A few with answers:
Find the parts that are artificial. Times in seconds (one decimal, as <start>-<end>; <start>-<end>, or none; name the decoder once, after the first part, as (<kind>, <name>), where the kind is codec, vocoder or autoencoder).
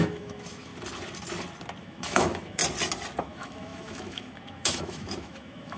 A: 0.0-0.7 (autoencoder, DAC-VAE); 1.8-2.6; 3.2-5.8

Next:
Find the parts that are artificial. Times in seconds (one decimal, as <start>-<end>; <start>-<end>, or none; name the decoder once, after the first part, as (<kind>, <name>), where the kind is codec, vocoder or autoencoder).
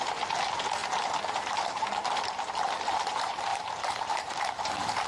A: 0.0-0.8 (vocoder, BigVGAN v2); 2.8-5.1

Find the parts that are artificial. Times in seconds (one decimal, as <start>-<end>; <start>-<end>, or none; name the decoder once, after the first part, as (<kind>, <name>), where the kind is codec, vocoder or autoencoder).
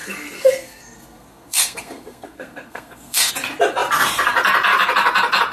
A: 0.0-3.3 (codec, SNAC)